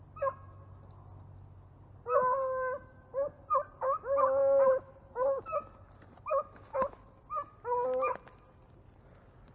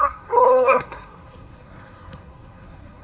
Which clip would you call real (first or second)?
first